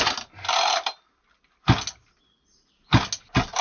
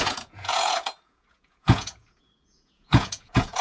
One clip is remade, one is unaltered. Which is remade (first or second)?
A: second